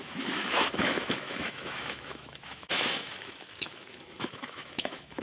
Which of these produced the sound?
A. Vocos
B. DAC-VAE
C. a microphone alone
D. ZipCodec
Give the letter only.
B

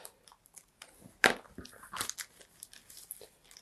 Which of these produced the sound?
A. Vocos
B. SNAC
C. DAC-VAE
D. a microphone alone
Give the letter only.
D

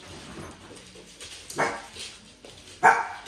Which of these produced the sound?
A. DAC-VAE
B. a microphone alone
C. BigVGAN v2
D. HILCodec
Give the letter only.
B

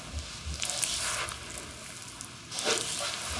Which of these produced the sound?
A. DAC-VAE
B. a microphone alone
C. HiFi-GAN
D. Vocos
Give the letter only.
B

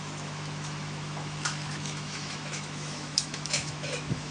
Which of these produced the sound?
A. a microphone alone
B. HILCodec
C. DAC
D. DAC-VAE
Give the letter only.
D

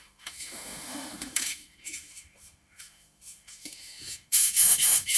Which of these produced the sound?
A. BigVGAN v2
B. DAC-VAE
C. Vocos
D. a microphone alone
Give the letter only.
B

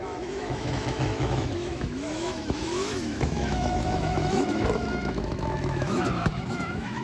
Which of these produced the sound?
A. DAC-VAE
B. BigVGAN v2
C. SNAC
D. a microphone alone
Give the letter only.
A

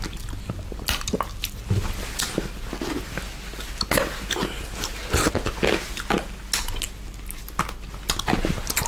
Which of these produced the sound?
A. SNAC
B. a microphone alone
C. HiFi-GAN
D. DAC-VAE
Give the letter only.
B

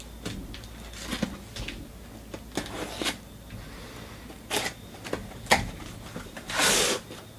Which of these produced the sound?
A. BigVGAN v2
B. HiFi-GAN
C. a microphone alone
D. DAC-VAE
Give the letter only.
C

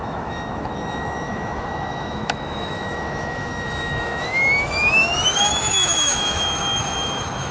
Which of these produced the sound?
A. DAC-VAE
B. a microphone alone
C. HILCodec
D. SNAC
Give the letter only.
A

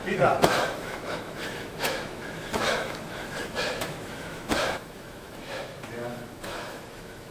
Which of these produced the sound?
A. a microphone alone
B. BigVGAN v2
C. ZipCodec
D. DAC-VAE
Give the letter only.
D